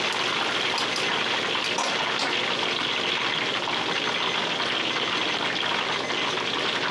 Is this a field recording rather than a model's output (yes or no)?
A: yes